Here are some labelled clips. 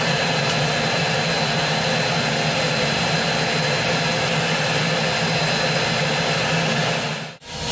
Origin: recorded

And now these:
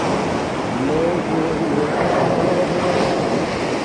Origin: recorded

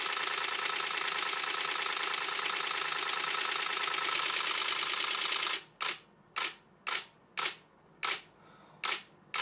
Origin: recorded